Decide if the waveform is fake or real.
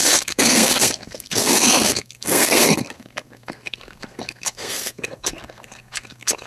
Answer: fake